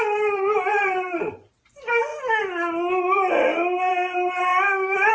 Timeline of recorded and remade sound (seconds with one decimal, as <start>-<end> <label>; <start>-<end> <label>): 0.0-2.1 remade; 2.1-3.9 recorded; 3.9-5.1 remade